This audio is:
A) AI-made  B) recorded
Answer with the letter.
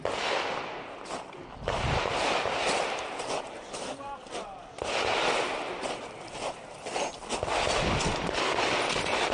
B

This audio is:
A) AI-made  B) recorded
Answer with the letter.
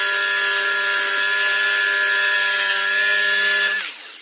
B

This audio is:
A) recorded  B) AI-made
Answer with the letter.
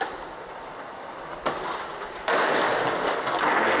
B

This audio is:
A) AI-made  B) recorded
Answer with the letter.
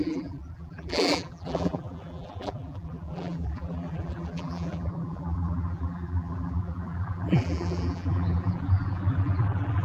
A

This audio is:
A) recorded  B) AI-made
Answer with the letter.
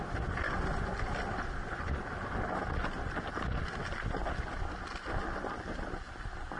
A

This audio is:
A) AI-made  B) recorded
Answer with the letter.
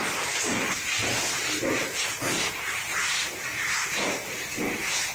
B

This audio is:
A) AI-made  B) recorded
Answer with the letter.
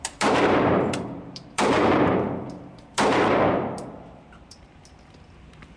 A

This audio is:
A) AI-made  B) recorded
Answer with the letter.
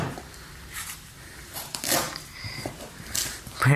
A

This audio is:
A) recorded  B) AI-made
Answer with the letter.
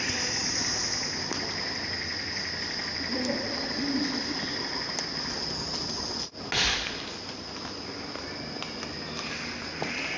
A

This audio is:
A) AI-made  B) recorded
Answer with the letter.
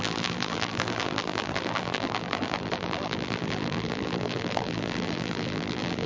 A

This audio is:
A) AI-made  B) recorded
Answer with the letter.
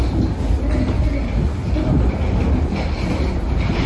B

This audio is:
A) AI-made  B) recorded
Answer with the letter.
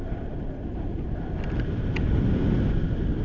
B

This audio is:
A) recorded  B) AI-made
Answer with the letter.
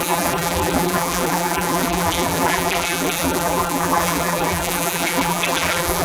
B